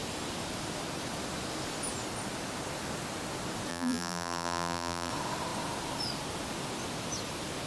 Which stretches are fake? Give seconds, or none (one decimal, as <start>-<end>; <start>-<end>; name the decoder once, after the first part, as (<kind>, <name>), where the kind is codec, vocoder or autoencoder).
3.7-5.1 (vocoder, BigVGAN v2)